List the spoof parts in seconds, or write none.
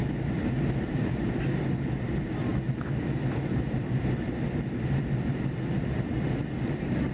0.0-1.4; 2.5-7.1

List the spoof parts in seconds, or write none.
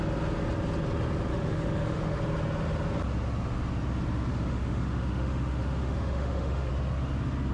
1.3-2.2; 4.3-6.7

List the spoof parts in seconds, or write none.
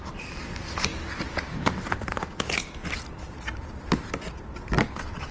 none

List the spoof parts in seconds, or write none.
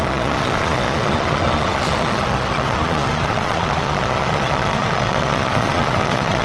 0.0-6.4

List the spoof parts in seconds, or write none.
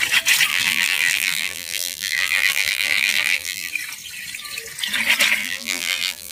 0.5-3.7; 5.4-6.3